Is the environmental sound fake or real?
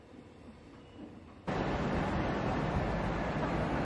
real